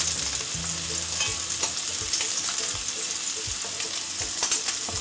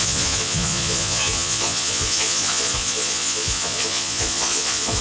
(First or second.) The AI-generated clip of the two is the second